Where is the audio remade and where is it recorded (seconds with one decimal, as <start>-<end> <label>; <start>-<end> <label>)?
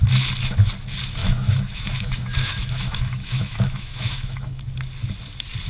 0.0-1.2 recorded; 1.2-4.6 remade; 4.6-5.7 recorded